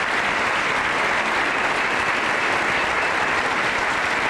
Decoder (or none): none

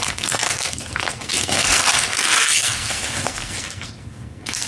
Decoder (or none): codec, SNAC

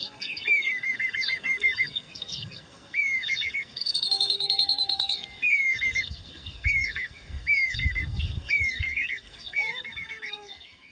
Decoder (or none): codec, SNAC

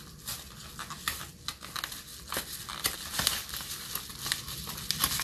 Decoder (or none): none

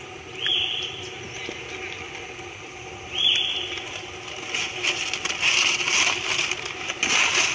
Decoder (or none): none